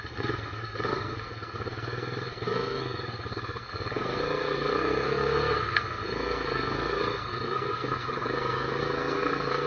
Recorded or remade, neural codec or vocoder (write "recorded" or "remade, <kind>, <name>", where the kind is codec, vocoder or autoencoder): remade, codec, SNAC